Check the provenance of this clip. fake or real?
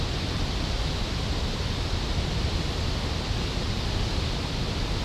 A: real